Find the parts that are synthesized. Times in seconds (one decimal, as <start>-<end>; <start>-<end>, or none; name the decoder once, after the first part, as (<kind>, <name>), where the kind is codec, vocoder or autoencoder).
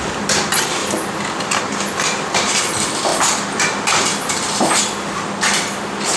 0.8-2.6 (vocoder, BigVGAN v2)